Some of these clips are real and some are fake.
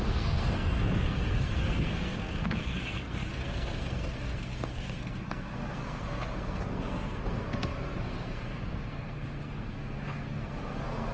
fake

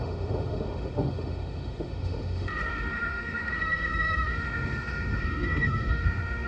fake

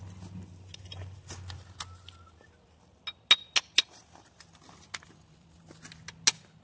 real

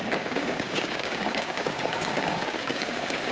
fake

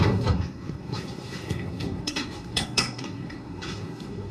fake